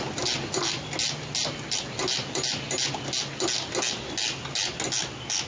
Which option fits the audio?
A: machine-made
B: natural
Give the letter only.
B